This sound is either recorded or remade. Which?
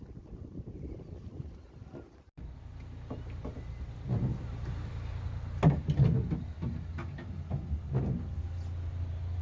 recorded